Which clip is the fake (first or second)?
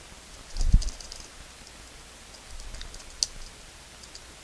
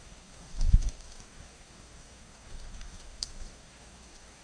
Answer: second